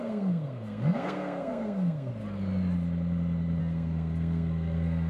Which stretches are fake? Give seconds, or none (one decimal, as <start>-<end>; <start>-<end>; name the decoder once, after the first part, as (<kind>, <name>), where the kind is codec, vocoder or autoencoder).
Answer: 0.0-2.1 (codec, SNAC); 3.6-5.1